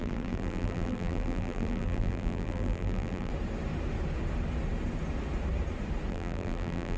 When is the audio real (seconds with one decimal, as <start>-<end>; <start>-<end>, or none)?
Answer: 3.3-6.1